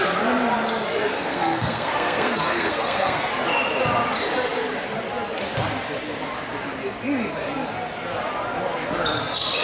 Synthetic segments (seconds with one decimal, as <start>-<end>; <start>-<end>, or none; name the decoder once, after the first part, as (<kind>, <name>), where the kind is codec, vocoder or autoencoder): 1.1-3.3 (codec, SNAC)